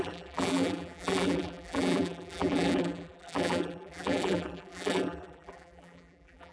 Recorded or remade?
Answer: remade